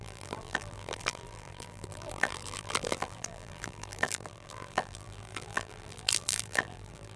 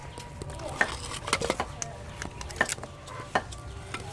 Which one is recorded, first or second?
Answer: second